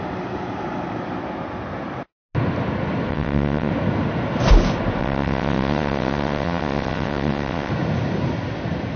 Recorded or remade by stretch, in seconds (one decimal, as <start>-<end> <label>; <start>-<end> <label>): 0.0-3.1 recorded; 3.1-3.7 remade; 3.7-5.0 recorded; 5.0-7.7 remade; 7.7-9.0 recorded